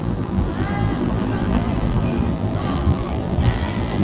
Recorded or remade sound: remade